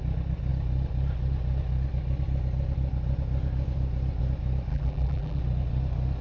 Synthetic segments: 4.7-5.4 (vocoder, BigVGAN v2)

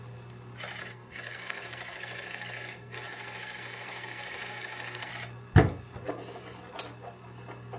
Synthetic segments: 0.8-5.1 (codec, SNAC)

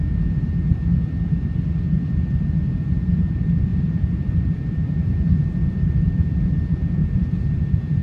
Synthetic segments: 3.7-5.3 (vocoder, BigVGAN v2); 7.0-8.0

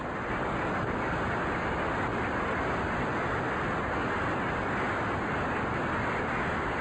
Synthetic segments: none